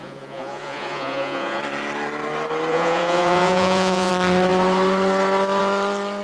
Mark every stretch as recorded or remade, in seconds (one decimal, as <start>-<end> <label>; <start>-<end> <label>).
0.0-1.6 remade; 1.6-2.7 recorded; 2.7-4.1 remade; 4.1-6.2 recorded